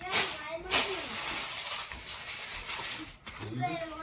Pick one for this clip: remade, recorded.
recorded